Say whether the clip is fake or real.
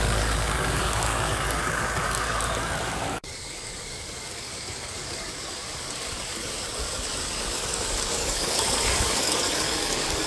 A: fake